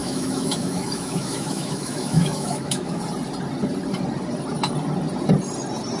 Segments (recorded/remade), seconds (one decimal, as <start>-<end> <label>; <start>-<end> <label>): 0.0-3.0 remade; 3.0-6.0 recorded

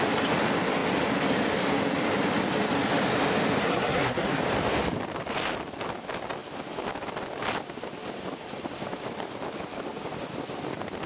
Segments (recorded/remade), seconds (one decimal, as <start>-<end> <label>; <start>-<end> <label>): 0.0-3.6 recorded; 3.6-4.4 remade; 4.4-11.1 recorded

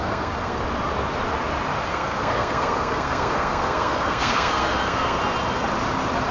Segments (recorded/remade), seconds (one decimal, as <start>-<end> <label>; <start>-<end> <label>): 0.0-0.6 remade; 0.6-1.9 recorded; 1.9-5.2 remade; 5.2-6.3 recorded

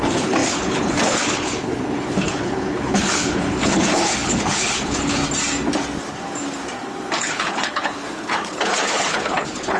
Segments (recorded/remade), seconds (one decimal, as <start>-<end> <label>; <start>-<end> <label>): 0.0-5.2 remade; 5.2-7.2 recorded; 7.2-9.8 remade

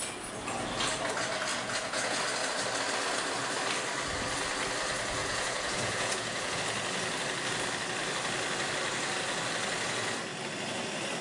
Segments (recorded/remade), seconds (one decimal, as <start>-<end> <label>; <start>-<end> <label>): 0.0-1.5 recorded; 1.5-2.2 remade; 2.2-5.2 recorded; 5.2-6.6 remade; 6.6-11.2 recorded

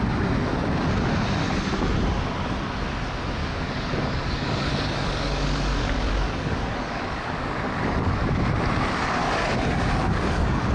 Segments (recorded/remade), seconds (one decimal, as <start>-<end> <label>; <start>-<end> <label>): 0.0-3.4 recorded; 3.4-8.5 remade; 8.5-9.2 recorded; 9.2-10.7 remade